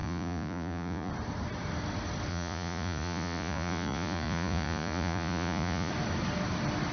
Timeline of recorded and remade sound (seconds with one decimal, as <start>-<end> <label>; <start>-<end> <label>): 0.0-1.1 remade; 1.1-2.3 recorded; 2.3-5.9 remade; 5.9-6.9 recorded